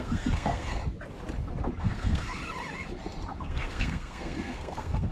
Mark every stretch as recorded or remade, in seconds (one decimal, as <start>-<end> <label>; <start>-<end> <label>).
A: 0.0-0.8 remade; 0.8-1.8 recorded; 1.8-2.4 remade; 2.4-3.4 recorded; 3.4-5.1 remade